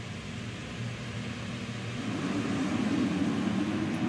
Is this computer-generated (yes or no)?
no